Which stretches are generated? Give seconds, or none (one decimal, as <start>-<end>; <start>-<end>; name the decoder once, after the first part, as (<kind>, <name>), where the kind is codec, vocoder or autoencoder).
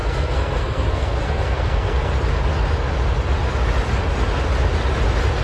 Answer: 0.0-2.1 (codec, SNAC)